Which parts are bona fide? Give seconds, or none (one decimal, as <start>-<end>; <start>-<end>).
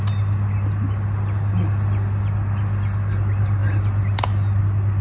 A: 0.0-5.0